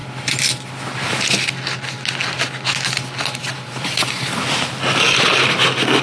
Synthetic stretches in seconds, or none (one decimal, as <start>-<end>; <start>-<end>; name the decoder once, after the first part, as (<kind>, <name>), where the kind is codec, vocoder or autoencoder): 0.0-0.7 (vocoder, BigVGAN v2); 3.4-4.4